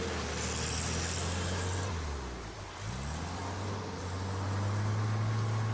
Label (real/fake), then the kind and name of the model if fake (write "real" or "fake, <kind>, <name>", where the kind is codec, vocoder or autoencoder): real